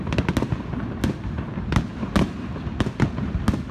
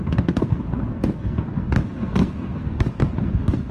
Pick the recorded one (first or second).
first